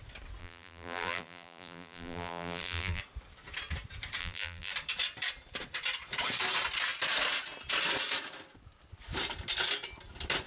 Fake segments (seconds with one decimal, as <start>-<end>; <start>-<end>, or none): 0.4-3.0; 4.2-4.7

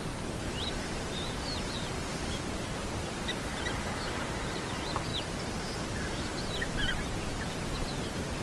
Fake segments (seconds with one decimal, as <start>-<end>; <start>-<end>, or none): 0.0-3.5; 4.1-8.4